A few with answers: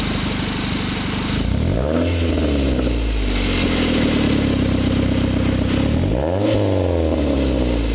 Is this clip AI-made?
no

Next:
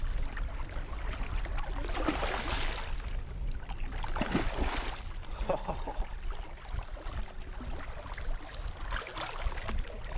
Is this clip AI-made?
no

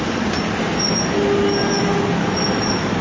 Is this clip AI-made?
no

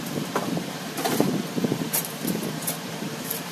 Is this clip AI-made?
yes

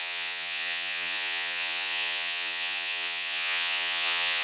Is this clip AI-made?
yes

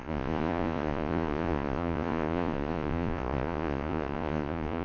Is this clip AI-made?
yes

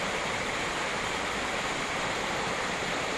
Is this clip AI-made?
yes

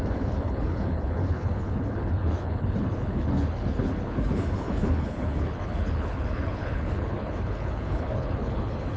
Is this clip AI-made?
yes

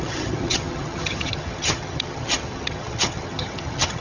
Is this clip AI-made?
yes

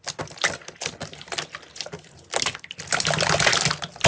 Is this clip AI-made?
no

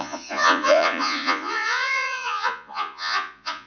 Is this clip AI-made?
yes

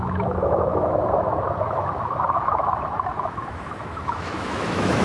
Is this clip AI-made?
yes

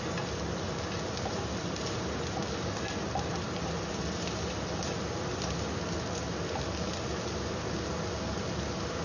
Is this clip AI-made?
no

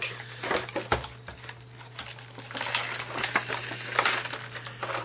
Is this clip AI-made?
no